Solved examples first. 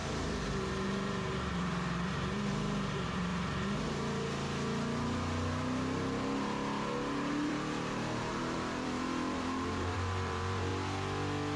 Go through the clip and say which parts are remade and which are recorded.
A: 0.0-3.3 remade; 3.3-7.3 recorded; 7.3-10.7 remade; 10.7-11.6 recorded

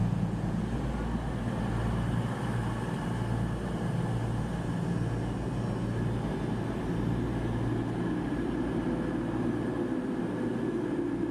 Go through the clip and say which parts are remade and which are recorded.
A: 0.0-0.6 remade; 0.6-11.3 recorded